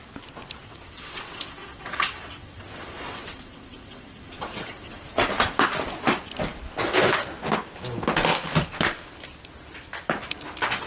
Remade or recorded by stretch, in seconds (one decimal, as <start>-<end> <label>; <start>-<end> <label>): 0.0-0.6 recorded; 0.6-5.0 remade; 5.0-10.9 recorded